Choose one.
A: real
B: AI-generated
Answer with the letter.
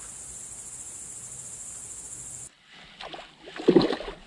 A